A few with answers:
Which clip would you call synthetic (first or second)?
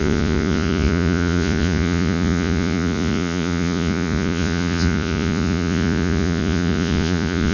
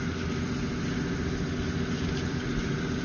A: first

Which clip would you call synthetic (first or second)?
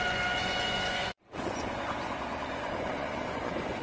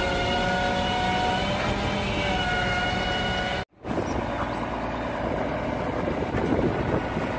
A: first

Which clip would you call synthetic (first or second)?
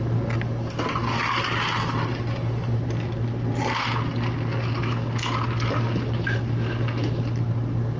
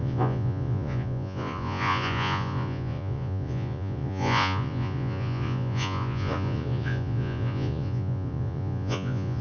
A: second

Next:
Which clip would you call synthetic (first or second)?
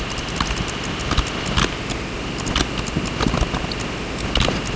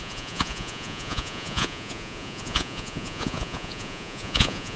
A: second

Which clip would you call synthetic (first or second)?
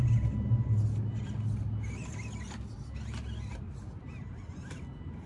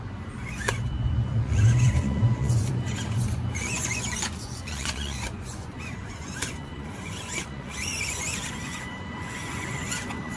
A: second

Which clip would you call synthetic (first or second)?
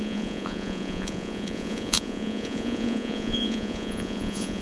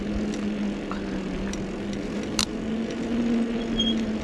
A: first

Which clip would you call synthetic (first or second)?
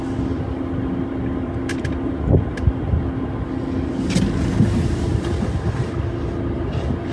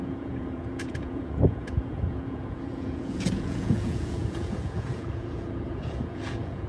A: second